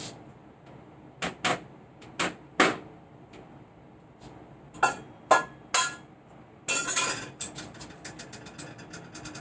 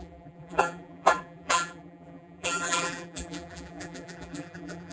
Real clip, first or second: first